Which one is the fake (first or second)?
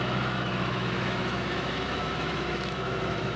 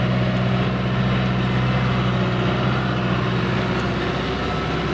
first